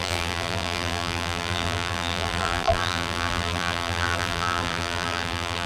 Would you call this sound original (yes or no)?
no